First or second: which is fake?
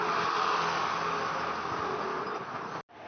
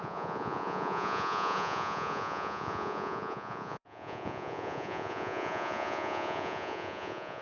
second